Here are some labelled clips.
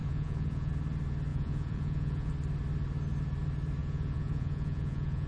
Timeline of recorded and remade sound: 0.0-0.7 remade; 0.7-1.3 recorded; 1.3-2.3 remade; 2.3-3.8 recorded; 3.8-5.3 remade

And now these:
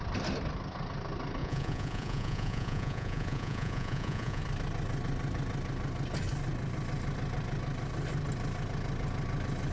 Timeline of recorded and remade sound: 0.0-1.4 recorded; 1.4-4.4 remade; 4.4-9.7 recorded

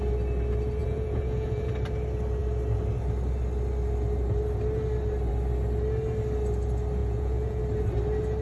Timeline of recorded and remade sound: 0.0-0.8 recorded; 0.8-1.7 remade; 1.7-7.0 recorded; 7.0-7.6 remade; 7.6-8.4 recorded

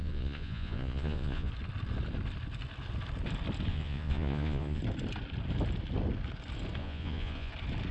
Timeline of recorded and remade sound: 0.0-1.5 remade; 1.5-3.7 recorded; 3.7-4.8 remade; 4.8-6.8 recorded; 6.8-7.5 remade; 7.5-7.9 recorded

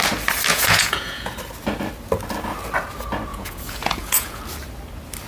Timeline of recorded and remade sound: 0.0-0.5 recorded; 0.5-1.3 remade; 1.3-3.3 recorded; 3.3-4.4 remade; 4.4-5.3 recorded

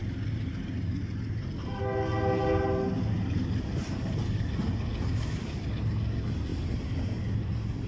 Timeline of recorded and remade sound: 0.0-7.9 recorded

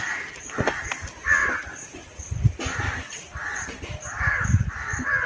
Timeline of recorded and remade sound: 0.0-5.3 recorded

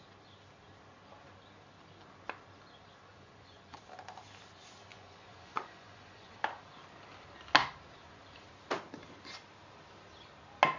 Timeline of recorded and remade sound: 0.0-3.1 recorded; 3.1-3.8 remade; 3.8-4.9 recorded; 4.9-6.3 remade; 6.3-10.8 recorded